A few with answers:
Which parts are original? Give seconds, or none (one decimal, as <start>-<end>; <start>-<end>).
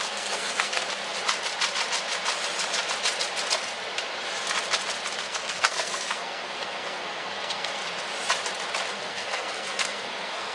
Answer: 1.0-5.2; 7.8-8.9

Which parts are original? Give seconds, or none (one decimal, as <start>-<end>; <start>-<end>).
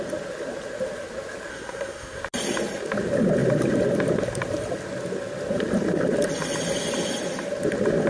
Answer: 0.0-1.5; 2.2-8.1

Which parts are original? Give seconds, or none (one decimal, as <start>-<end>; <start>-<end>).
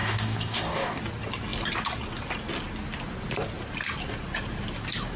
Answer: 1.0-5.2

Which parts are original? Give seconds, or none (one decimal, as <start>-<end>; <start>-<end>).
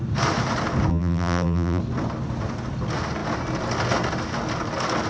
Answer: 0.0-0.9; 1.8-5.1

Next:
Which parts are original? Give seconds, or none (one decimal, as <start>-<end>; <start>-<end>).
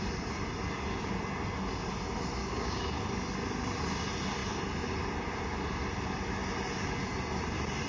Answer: 0.0-2.4; 3.0-7.9